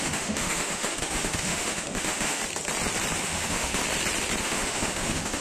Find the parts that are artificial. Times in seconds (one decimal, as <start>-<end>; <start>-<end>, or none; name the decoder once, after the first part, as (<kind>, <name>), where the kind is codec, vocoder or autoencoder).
0.0-2.4 (autoencoder, DAC-VAE); 3.2-3.8; 4.4-5.4